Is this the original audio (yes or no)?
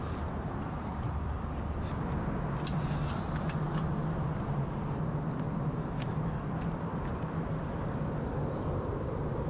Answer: yes